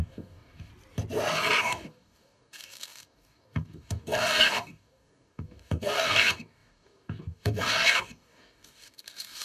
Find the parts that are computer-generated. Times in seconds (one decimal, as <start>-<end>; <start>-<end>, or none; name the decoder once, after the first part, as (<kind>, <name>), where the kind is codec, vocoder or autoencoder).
0.0-0.7 (codec, DAC); 1.6-9.4